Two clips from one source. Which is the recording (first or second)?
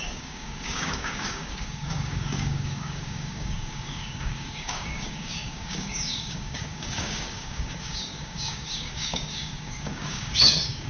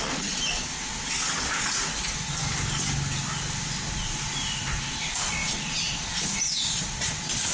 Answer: second